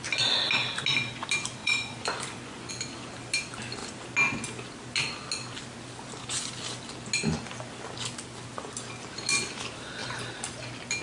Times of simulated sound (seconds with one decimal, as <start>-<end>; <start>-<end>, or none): 1.6-2.7